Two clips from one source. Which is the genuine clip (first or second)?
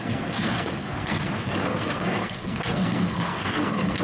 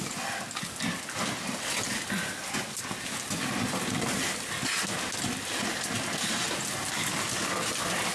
second